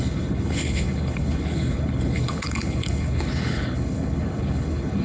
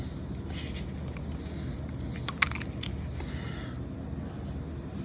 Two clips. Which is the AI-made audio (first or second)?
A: first